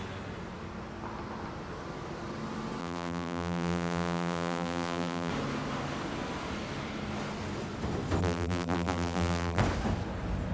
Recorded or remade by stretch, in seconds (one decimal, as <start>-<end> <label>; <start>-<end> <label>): 0.0-2.8 recorded; 2.8-5.3 remade; 5.3-8.2 recorded; 8.2-9.6 remade; 9.6-10.5 recorded